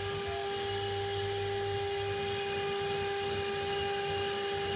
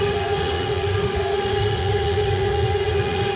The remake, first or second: second